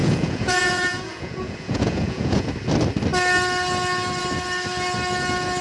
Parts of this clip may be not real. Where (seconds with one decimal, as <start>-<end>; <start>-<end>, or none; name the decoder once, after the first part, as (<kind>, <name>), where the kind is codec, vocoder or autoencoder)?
0.0-2.5 (vocoder, Vocos)